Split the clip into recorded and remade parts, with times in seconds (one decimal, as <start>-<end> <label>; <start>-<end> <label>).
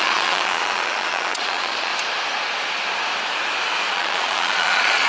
0.0-1.9 remade; 1.9-3.9 recorded; 3.9-5.1 remade